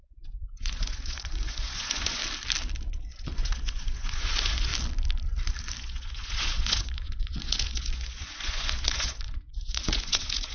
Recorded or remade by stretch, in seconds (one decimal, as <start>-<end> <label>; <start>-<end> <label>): 0.0-2.2 remade; 2.2-2.9 recorded; 2.9-4.7 remade; 4.7-5.8 recorded; 5.8-10.5 remade